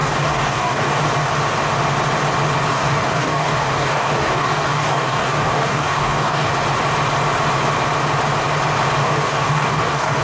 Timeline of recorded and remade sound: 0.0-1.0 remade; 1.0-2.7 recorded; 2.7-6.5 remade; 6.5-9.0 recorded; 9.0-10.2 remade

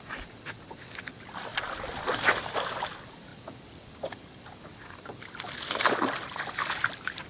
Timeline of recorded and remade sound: 0.0-7.3 recorded

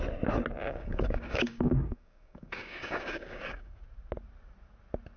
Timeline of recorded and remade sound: 0.0-0.6 recorded; 0.6-3.7 remade; 3.7-5.2 recorded

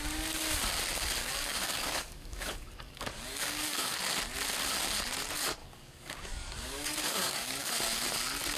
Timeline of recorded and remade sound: 0.0-1.2 recorded; 1.2-4.0 remade; 4.0-5.6 recorded; 5.6-7.7 remade; 7.7-8.6 recorded

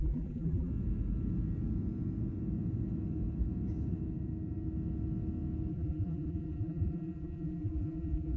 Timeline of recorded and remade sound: 0.0-0.7 remade; 0.7-5.7 recorded; 5.7-8.4 remade